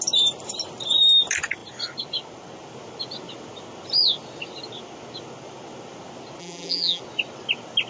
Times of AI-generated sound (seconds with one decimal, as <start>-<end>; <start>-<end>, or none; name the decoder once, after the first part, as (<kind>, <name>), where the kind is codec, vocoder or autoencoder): 6.4-7.0 (vocoder, BigVGAN v2)